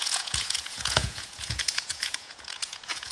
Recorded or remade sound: remade